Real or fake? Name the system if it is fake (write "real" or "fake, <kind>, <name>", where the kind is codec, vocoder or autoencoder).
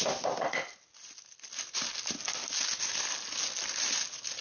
real